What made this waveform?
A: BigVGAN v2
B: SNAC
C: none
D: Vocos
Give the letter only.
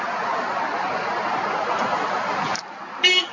C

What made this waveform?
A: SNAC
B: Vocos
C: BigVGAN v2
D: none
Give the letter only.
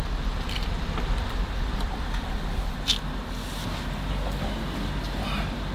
D